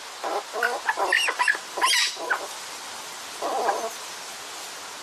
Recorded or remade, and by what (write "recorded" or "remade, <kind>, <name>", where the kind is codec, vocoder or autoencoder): recorded